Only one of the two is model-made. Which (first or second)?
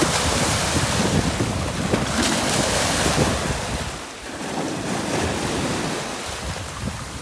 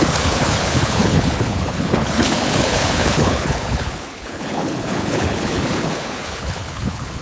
second